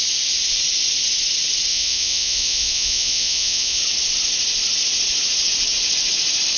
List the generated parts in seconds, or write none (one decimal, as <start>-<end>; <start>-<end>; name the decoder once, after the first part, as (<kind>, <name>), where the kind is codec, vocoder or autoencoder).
1.7-3.8 (vocoder, Vocos)